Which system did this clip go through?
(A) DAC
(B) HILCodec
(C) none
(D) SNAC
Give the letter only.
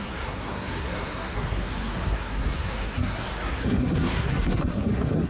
D